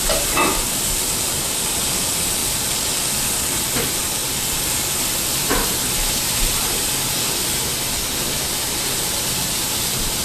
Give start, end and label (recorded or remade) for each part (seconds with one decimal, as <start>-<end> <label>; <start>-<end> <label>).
0.0-10.2 recorded

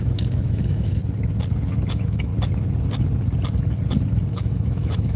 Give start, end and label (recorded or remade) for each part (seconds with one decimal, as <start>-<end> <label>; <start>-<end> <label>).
0.0-1.0 remade; 1.0-1.9 recorded; 1.9-2.3 remade; 2.3-4.3 recorded; 4.3-5.2 remade

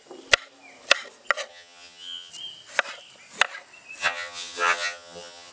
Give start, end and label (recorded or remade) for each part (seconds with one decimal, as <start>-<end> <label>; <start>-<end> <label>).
0.0-1.5 recorded; 1.5-2.3 remade; 2.3-4.0 recorded; 4.0-5.5 remade

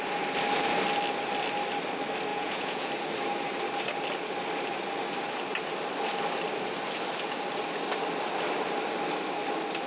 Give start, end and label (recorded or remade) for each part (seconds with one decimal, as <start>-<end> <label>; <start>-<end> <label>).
0.0-2.3 recorded; 2.3-2.9 remade; 2.9-9.9 recorded